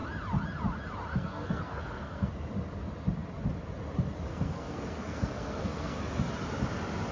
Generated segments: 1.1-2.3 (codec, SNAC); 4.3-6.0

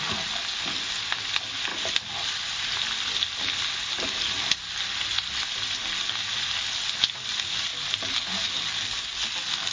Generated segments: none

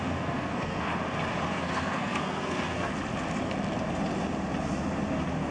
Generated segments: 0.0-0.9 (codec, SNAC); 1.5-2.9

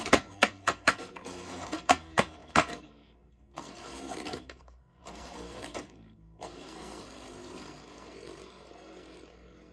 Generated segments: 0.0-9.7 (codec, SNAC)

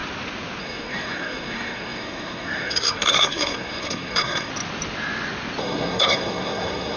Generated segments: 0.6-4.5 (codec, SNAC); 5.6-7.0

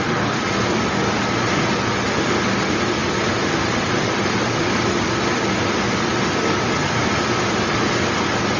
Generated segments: none